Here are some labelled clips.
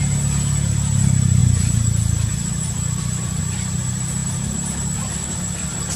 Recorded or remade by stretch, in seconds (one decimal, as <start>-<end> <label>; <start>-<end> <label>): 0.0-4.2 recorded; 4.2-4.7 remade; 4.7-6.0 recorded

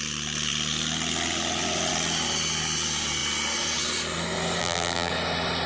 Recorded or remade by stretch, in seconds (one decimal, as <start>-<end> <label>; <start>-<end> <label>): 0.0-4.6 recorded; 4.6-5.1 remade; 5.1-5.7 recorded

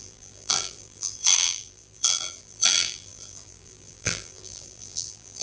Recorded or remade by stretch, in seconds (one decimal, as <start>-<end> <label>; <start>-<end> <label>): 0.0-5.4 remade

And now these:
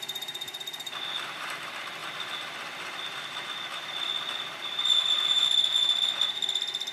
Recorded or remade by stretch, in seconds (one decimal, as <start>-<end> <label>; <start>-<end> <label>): 0.0-6.9 remade

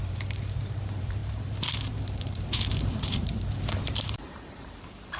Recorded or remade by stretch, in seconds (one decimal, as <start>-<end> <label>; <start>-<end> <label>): 0.0-5.2 remade

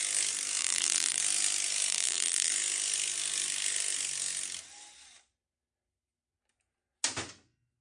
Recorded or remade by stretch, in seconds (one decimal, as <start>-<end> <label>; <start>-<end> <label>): 0.0-0.6 recorded; 0.6-1.2 remade; 1.2-1.9 recorded; 1.9-2.5 remade; 2.5-7.8 recorded

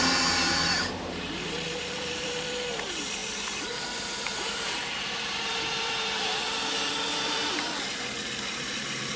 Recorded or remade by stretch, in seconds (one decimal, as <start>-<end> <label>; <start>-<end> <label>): 0.0-9.2 remade